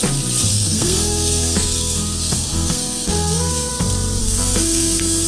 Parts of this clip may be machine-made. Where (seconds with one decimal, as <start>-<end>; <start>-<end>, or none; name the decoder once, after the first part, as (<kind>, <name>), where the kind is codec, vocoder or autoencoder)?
0.5-3.7 (codec, SNAC); 4.2-5.3